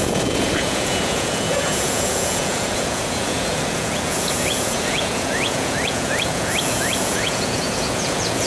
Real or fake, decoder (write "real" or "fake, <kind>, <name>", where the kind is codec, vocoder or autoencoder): fake, vocoder, Vocos